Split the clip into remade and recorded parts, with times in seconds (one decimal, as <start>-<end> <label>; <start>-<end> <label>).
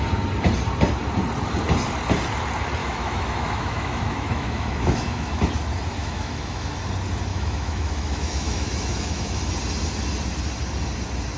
0.0-2.8 recorded; 2.8-5.4 remade; 5.4-6.0 recorded; 6.0-6.8 remade; 6.8-7.3 recorded; 7.3-9.5 remade; 9.5-11.4 recorded